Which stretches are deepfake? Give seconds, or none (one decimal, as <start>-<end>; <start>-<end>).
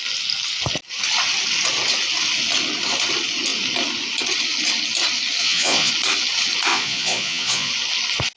5.4-5.9; 6.7-7.7